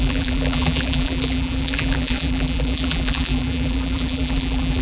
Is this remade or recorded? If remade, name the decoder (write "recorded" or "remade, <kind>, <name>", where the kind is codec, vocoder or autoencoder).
remade, vocoder, BigVGAN v2